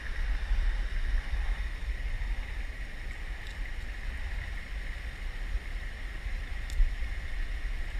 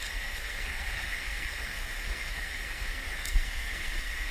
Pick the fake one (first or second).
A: second